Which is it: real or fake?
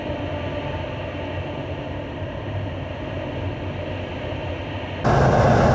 real